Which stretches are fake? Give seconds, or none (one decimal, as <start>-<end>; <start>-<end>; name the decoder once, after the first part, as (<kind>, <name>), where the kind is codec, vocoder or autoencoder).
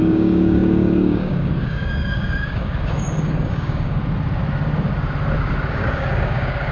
0.0-4.0 (codec, DAC); 5.7-6.7